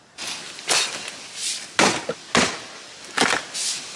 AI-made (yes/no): no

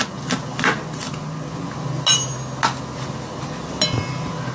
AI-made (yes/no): no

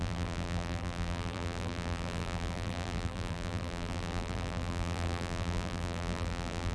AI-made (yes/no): yes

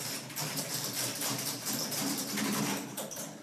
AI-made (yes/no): yes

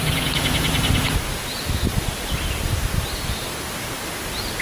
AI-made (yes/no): no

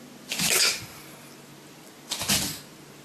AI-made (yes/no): no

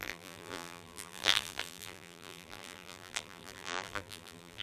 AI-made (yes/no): yes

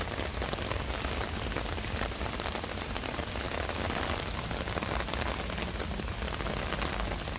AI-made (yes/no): no